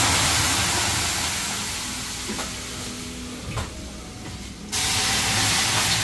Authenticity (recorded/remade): recorded